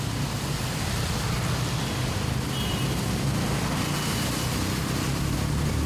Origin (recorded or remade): recorded